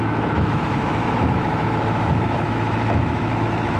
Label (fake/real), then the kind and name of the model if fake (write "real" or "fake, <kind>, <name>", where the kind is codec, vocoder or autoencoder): fake, autoencoder, DAC-VAE